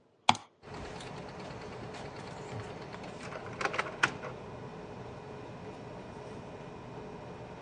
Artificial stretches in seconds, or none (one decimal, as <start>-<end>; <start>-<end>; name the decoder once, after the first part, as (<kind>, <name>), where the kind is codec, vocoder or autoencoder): 0.4-3.5 (vocoder, BigVGAN v2); 4.7-5.3